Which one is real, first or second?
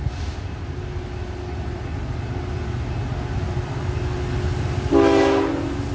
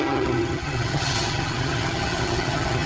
first